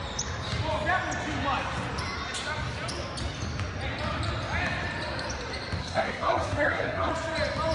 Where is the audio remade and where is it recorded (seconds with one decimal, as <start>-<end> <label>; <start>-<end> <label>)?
0.0-5.8 recorded; 5.8-7.1 remade; 7.1-7.7 recorded